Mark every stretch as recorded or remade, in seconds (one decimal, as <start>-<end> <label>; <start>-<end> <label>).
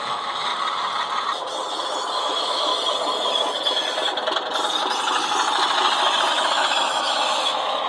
0.0-0.5 remade; 0.5-2.2 recorded; 2.2-2.7 remade; 2.7-6.3 recorded; 6.3-7.9 remade